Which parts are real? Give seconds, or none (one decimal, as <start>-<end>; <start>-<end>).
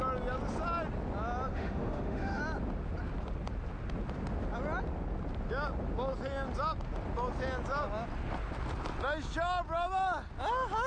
0.0-1.5; 2.4-10.9